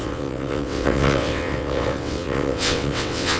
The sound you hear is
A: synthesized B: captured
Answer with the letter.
A